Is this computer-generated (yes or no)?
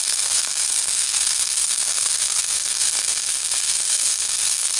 yes